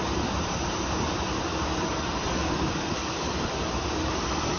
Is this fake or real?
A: real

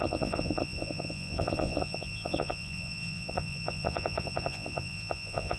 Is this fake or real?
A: fake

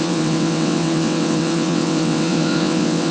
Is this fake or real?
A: fake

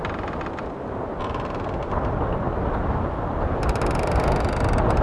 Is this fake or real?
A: real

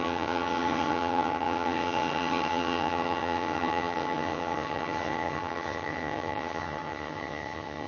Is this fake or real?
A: fake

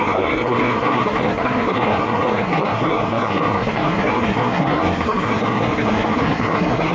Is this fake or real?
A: fake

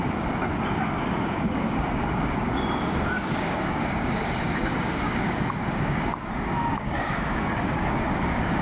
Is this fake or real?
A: fake